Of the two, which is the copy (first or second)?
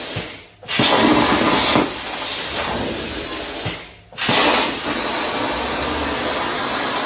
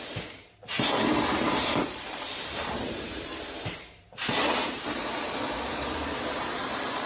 second